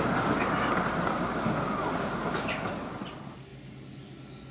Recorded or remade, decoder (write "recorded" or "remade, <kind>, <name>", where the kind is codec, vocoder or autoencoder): recorded